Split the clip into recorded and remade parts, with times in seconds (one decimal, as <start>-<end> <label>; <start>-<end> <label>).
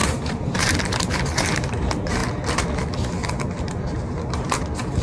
0.0-2.2 remade; 2.2-3.6 recorded; 3.6-5.0 remade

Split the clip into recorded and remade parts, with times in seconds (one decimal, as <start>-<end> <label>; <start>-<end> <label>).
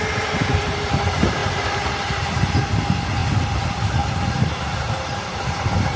0.0-1.4 recorded; 1.4-2.6 remade; 2.6-6.0 recorded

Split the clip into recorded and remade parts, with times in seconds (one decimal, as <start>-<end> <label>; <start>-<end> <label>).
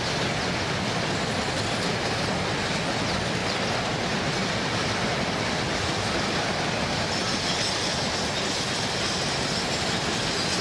0.0-10.6 recorded